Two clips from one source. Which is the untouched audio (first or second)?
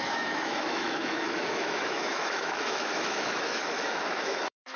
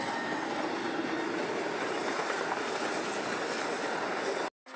second